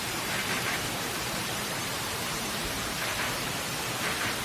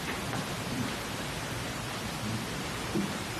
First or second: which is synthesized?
first